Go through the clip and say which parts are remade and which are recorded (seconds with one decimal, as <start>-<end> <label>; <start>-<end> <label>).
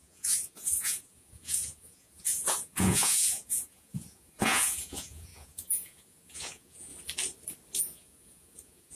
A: 0.0-6.9 remade; 6.9-7.8 recorded; 7.8-8.9 remade